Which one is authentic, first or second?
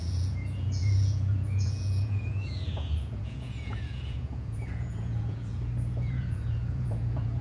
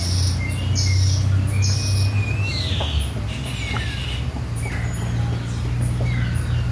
second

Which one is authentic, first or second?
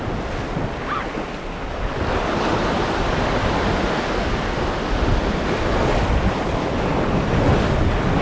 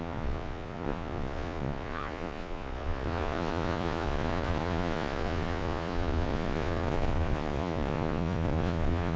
first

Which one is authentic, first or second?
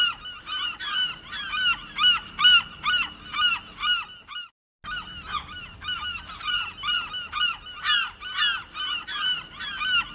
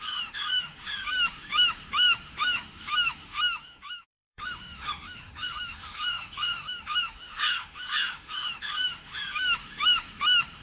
first